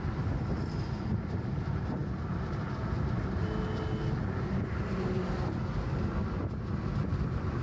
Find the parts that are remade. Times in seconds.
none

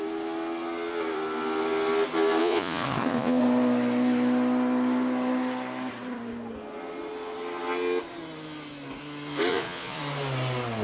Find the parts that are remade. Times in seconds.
2.4-3.4 (vocoder, Vocos); 9.5-10.0

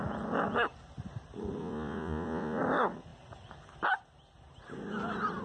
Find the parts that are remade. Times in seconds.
1.6-2.6 (vocoder, Vocos)